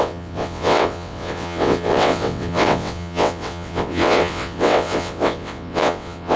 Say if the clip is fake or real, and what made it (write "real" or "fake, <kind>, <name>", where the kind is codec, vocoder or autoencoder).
fake, vocoder, WaveNeXt